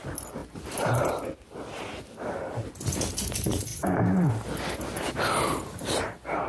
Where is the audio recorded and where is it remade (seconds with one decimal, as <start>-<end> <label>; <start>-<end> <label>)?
0.0-0.4 recorded; 0.4-1.2 remade; 1.2-3.7 recorded; 3.7-4.3 remade; 4.3-6.5 recorded